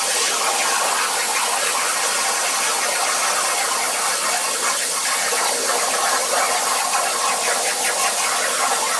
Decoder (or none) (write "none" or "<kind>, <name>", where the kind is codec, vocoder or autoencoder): none